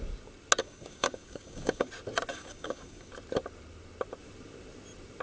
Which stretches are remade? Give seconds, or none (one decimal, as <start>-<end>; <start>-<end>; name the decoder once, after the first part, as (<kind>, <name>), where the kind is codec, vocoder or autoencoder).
0.6-1.9 (codec, DAC); 2.3-3.1

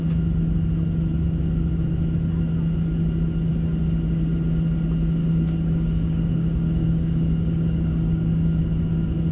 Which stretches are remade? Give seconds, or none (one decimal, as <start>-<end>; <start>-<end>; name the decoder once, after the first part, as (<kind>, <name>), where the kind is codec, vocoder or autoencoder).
5.2-8.6 (codec, DAC)